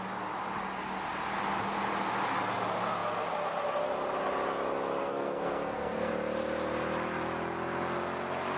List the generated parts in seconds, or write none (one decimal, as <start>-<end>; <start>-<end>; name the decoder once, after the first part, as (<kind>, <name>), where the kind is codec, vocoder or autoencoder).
5.0-6.1 (codec, SNAC)